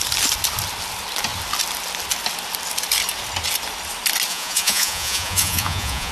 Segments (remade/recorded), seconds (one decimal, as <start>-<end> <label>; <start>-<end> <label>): 0.0-4.3 recorded; 4.3-6.1 remade